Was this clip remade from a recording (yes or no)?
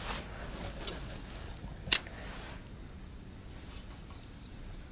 no